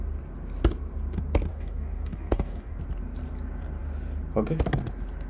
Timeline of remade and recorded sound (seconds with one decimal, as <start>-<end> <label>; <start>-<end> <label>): 0.0-1.5 recorded; 1.5-2.8 remade; 2.8-5.3 recorded